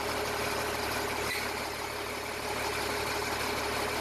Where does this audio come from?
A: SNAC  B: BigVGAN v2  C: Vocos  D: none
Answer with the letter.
D